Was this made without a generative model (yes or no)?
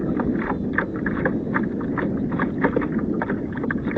yes